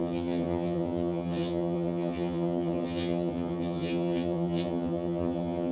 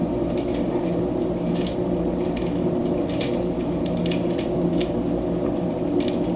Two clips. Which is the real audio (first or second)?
second